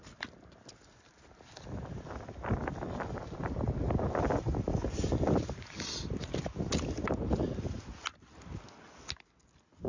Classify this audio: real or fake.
real